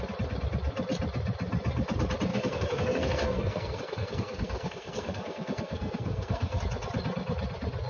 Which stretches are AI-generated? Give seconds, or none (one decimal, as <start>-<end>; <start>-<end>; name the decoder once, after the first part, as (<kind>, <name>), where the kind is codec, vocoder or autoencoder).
2.3-6.6 (codec, SNAC)